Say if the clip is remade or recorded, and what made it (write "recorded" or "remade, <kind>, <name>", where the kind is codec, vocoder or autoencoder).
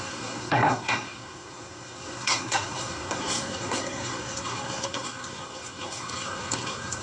remade, codec, SNAC